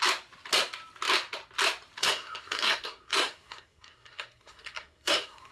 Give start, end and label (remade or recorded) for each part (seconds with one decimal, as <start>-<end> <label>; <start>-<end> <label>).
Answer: 0.0-2.0 recorded; 2.0-5.5 remade